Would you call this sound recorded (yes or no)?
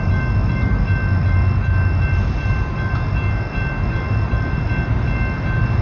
yes